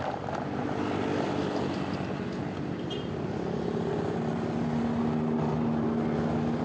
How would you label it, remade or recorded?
recorded